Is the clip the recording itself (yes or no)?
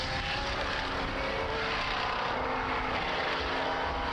yes